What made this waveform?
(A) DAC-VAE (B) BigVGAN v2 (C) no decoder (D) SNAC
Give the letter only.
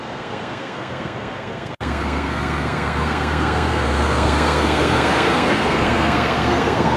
D